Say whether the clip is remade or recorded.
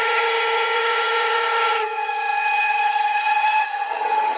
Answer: remade